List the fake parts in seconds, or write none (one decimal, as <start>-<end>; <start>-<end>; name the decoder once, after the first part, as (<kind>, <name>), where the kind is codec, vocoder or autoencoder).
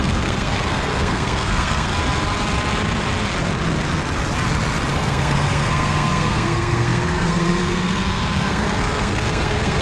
0.0-1.9 (codec, SNAC); 4.9-9.8